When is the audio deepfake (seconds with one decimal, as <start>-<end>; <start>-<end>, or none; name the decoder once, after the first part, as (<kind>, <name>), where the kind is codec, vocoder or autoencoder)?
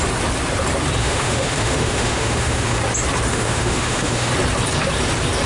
1.0-2.8 (autoencoder, DAC-VAE); 3.3-4.3